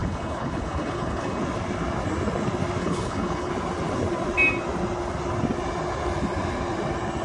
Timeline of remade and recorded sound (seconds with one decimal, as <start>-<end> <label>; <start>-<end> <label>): 0.0-1.4 remade; 1.4-2.8 recorded; 2.8-3.5 remade; 3.5-7.2 recorded